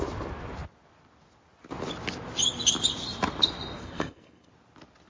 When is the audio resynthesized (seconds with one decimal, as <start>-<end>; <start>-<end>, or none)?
3.8-4.5